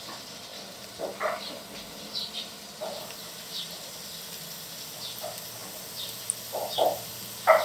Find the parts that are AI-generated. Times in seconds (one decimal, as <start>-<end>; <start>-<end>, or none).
none